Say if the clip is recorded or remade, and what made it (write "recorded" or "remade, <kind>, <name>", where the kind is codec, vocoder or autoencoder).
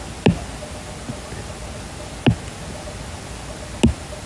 recorded